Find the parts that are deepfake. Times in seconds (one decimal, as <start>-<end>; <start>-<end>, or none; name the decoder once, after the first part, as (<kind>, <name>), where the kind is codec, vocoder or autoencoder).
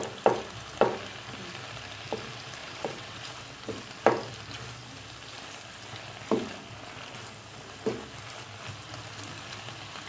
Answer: 2.6-3.2 (vocoder, WaveNeXt)